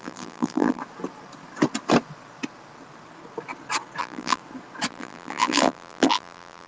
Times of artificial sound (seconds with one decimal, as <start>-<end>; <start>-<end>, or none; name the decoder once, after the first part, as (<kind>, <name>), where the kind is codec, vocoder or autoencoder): 0.0-0.8 (vocoder, BigVGAN v2); 4.0-4.4; 4.9-6.7